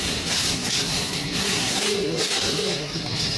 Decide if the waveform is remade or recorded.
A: remade